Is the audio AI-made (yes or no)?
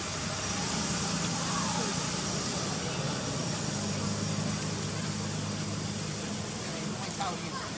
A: no